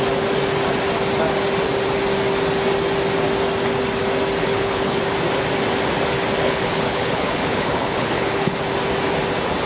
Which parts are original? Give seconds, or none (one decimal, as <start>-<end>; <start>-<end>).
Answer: 0.0-4.4; 5.0-6.4; 8.6-9.7